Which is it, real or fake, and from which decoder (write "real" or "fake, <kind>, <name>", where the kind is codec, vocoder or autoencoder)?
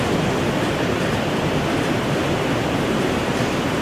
fake, vocoder, BigVGAN v2